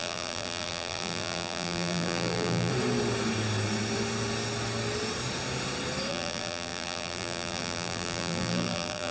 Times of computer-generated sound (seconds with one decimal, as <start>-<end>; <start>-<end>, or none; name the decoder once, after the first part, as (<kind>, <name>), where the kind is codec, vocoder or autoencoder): 0.0-2.7 (vocoder, BigVGAN v2); 6.1-9.1